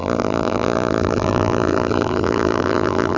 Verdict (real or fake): fake